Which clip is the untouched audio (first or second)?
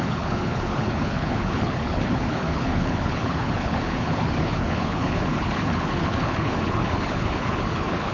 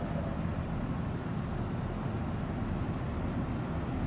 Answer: second